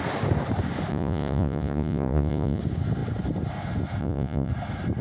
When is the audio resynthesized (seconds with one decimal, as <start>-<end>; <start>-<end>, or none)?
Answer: 0.9-2.6; 4.0-4.5